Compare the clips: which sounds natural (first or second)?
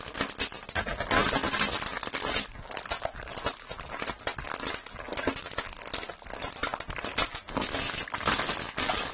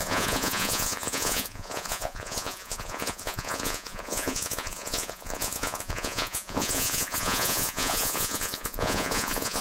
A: first